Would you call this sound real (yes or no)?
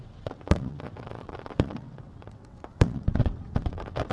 no